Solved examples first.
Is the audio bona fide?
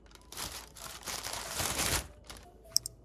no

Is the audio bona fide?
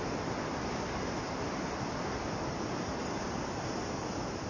yes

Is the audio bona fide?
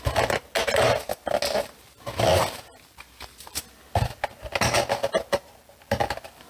yes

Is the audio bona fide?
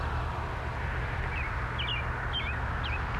yes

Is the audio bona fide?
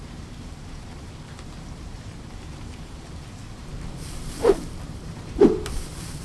no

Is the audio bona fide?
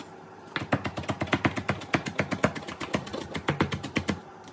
no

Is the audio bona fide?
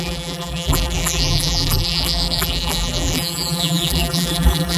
no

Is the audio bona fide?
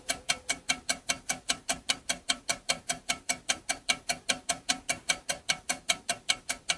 no